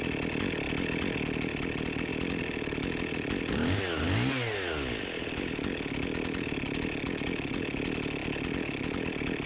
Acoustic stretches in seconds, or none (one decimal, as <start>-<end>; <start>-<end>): 0.0-9.5